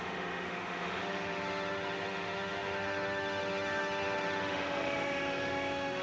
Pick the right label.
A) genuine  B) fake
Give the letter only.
B